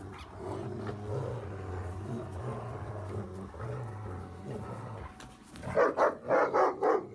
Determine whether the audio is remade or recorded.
recorded